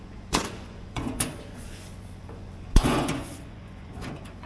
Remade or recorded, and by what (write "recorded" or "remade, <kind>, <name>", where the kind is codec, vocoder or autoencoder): remade, vocoder, Vocos